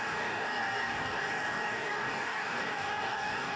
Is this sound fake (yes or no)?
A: yes